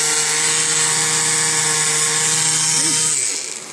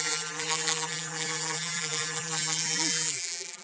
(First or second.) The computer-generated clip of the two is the second